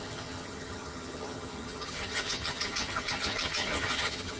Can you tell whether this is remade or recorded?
remade